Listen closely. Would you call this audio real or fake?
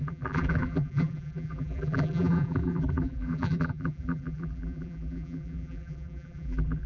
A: fake